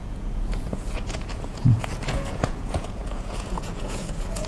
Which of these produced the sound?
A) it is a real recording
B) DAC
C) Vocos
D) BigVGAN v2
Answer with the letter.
C